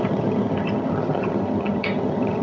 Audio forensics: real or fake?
fake